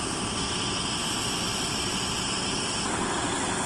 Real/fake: real